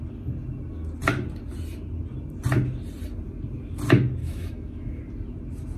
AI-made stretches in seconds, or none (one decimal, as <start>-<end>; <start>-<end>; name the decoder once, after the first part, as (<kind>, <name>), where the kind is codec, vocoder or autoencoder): 4.2-5.0 (autoencoder, DAC-VAE)

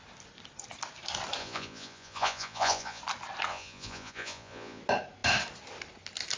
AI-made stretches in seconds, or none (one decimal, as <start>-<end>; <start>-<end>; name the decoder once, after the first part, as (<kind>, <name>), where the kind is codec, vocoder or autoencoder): 1.4-3.0 (vocoder, Vocos); 3.5-4.8